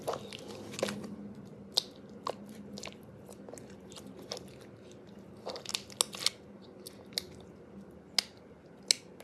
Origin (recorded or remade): recorded